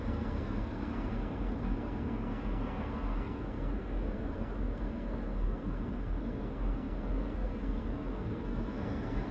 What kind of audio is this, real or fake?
fake